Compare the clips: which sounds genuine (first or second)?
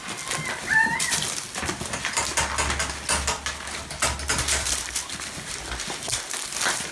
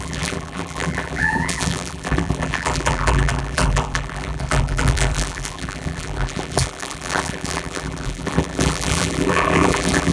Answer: first